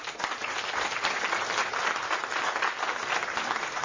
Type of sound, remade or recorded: recorded